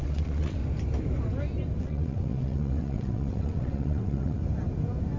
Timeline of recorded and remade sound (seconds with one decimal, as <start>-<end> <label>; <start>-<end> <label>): 0.0-0.6 remade; 0.6-1.8 recorded; 1.8-4.4 remade; 4.4-5.2 recorded